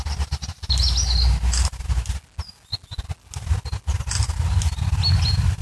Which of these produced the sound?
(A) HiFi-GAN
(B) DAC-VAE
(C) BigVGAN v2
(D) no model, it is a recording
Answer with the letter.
D